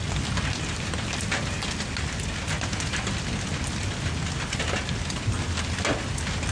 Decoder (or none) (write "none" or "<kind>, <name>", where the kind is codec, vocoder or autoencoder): none